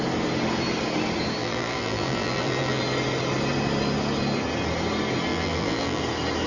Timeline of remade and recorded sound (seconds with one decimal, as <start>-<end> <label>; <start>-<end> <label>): 0.0-1.4 recorded; 1.4-2.8 remade; 2.8-5.3 recorded; 5.3-6.0 remade; 6.0-6.5 recorded